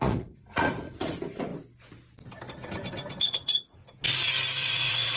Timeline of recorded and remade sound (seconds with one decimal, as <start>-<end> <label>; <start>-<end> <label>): 0.0-1.5 remade; 1.5-3.2 recorded; 3.2-3.8 remade; 3.8-4.6 recorded; 4.6-5.2 remade